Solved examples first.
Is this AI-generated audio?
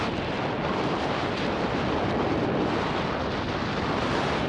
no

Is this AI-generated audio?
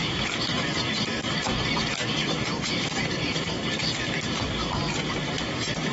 yes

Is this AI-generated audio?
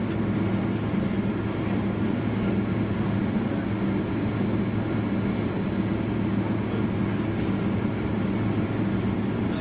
no